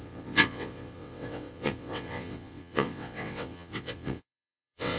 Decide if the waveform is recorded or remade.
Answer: remade